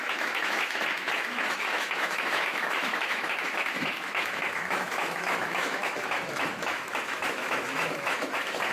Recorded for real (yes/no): no